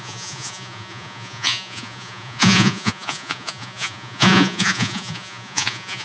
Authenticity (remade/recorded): remade